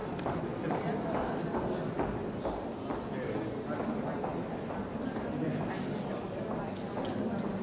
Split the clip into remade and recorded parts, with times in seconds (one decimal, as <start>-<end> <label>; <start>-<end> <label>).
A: 0.0-1.3 remade; 1.3-4.3 recorded; 4.3-5.7 remade; 5.7-7.6 recorded